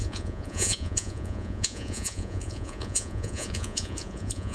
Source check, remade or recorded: remade